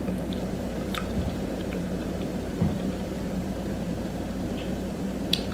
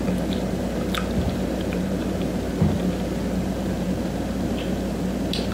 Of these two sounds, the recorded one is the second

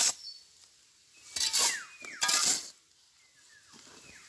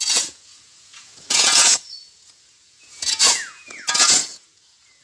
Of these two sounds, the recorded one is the first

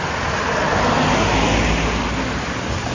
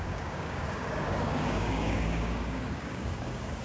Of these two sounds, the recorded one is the first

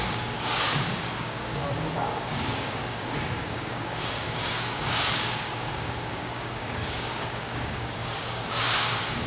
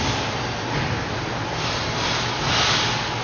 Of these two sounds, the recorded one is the second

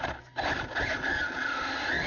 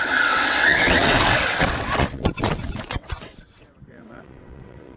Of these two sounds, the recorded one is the first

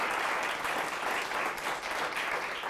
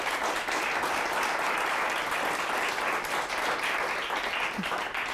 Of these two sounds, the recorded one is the second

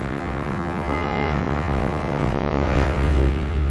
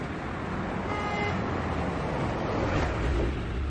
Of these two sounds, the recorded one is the second